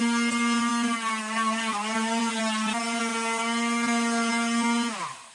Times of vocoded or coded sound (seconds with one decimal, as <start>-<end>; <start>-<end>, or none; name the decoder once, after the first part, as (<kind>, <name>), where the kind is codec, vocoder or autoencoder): none